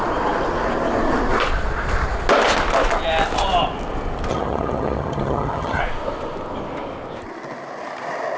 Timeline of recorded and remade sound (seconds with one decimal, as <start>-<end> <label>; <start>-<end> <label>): 0.0-4.3 recorded; 4.3-5.8 remade; 5.8-8.4 recorded